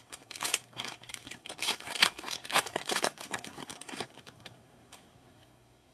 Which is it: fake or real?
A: fake